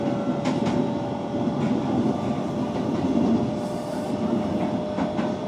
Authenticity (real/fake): real